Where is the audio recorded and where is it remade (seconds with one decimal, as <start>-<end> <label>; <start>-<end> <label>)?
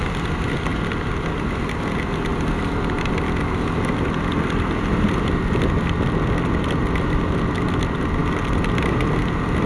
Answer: 0.0-9.7 recorded